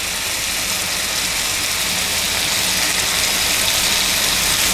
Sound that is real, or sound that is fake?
real